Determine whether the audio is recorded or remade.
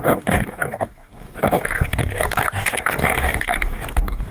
remade